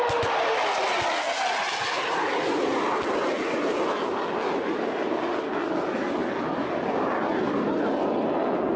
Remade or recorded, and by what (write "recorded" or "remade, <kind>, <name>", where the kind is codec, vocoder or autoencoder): recorded